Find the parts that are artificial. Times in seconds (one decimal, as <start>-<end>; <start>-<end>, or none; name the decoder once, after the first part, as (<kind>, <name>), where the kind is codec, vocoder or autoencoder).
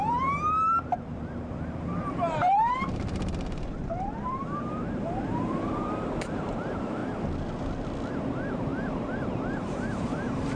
0.0-7.0 (vocoder, BigVGAN v2); 8.1-10.6